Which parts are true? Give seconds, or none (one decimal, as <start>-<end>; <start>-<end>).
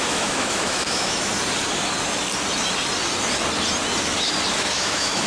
1.3-4.5